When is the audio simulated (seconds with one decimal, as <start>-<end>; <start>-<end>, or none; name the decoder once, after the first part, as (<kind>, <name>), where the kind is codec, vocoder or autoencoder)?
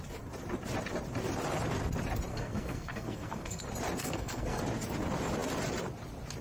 2.3-3.6 (codec, SNAC); 4.0-4.6